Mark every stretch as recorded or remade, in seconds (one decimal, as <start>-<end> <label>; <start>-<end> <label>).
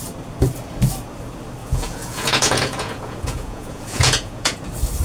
0.0-1.6 recorded; 1.6-4.6 remade; 4.6-5.0 recorded